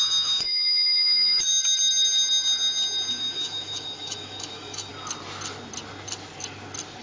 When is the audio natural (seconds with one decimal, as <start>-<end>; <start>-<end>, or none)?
1.5-3.1; 4.9-7.0